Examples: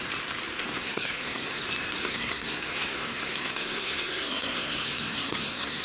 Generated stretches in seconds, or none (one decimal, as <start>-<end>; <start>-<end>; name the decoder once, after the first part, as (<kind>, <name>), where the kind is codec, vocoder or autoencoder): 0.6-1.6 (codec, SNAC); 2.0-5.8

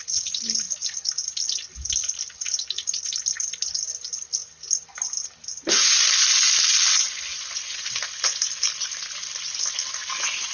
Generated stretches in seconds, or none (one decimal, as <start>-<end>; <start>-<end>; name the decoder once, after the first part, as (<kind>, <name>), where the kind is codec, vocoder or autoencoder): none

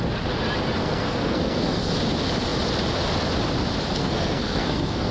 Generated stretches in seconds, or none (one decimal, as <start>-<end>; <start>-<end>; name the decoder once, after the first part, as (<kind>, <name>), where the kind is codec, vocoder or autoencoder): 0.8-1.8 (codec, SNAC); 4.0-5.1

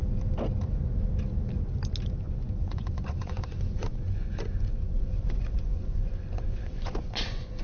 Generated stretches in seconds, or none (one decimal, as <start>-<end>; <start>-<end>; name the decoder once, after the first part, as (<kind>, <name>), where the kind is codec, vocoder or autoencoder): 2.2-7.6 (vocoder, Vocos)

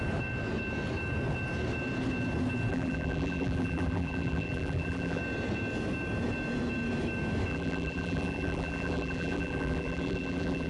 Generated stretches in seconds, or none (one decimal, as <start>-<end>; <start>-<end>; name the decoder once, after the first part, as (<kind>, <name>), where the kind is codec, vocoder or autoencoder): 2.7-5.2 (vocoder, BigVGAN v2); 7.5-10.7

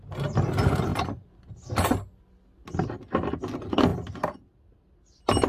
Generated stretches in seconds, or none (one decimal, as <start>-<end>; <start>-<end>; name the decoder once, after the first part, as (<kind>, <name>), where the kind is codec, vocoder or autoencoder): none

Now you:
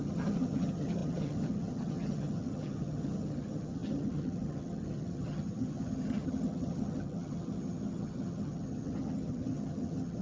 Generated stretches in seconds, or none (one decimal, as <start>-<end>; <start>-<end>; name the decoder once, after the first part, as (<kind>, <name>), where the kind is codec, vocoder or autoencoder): 0.0-10.2 (vocoder, HiFi-GAN)

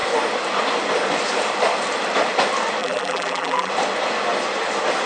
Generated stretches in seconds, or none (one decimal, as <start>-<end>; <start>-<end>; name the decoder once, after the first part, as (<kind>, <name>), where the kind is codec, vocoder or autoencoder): 2.8-3.7 (vocoder, BigVGAN v2)